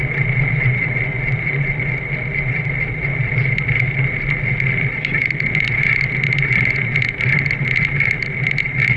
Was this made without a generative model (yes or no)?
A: yes